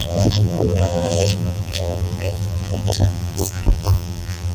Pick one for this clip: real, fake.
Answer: fake